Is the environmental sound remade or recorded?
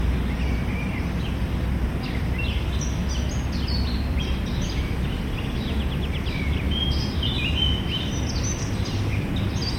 recorded